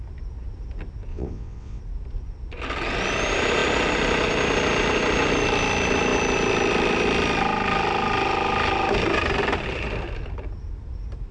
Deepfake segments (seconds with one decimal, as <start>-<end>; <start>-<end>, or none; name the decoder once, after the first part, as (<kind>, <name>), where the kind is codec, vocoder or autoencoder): 1.1-1.8 (vocoder, WaveNeXt)